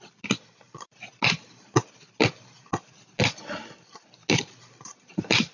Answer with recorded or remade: recorded